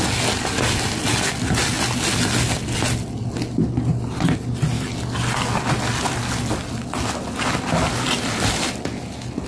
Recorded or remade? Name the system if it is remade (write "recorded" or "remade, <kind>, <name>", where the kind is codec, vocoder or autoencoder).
recorded